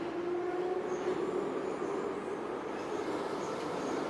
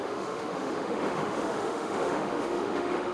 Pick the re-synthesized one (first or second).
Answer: second